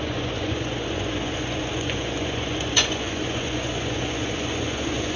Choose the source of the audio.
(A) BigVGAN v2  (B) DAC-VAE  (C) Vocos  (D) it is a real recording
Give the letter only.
C